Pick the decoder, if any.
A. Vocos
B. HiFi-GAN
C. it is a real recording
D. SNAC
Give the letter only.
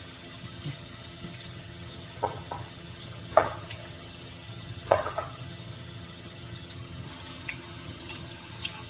B